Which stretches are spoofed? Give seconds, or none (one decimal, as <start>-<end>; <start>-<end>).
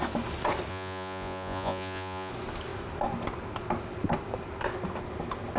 0.7-2.3